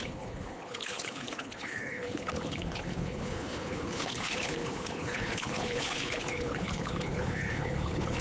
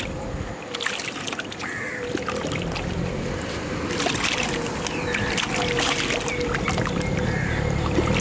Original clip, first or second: second